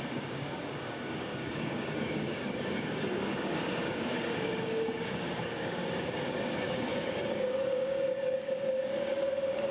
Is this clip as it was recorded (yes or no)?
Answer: no